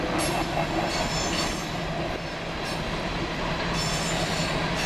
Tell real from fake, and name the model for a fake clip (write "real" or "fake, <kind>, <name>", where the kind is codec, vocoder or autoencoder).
real